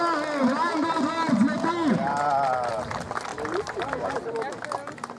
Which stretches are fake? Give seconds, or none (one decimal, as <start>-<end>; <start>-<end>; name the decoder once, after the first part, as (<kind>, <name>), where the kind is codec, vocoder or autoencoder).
3.3-4.3 (vocoder, BigVGAN v2)